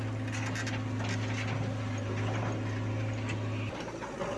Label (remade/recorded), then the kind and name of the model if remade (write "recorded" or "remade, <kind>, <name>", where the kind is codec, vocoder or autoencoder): recorded